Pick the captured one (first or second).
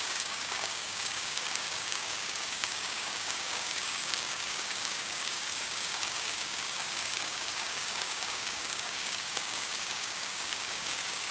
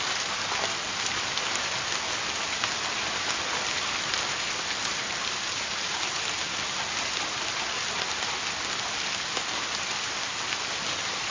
second